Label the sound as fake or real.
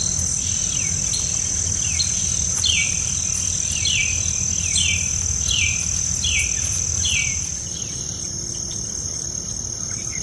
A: fake